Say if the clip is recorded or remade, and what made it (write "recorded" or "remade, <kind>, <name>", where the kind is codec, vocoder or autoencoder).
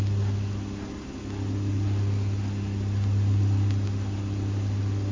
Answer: recorded